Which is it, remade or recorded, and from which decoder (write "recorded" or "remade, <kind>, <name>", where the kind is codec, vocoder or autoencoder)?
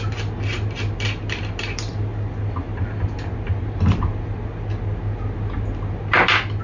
recorded